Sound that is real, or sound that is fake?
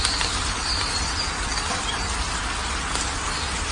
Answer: real